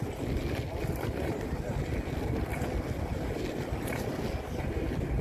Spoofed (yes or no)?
no